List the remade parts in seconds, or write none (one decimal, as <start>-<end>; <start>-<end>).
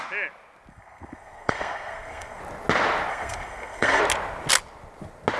0.7-2.4; 3.1-4.0